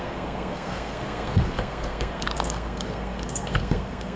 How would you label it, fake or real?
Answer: fake